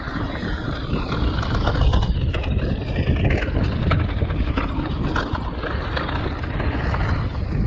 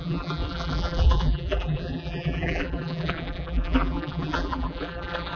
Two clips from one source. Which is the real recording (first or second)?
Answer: first